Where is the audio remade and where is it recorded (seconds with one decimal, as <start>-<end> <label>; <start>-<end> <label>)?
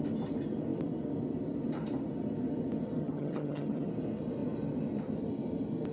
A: 0.0-3.0 recorded; 3.0-3.9 remade; 3.9-5.9 recorded